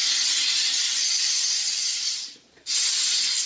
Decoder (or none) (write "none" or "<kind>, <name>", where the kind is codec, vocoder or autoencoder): none